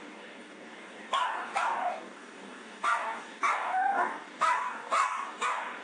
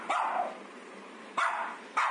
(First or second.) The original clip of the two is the second